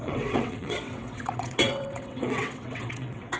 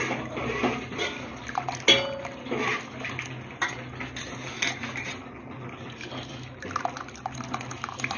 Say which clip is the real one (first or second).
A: second